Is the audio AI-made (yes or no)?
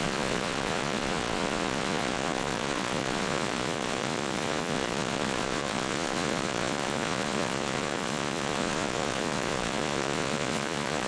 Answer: yes